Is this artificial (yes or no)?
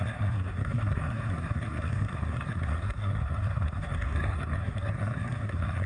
yes